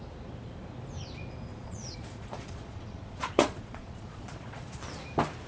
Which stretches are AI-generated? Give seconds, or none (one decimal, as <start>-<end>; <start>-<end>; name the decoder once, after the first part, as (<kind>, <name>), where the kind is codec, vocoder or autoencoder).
1.5-4.8 (vocoder, Vocos)